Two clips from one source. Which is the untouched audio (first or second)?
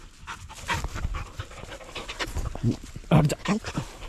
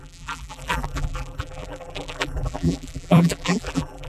first